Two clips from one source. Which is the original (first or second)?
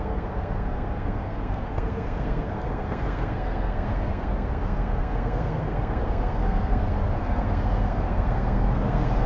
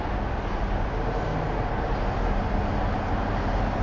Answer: second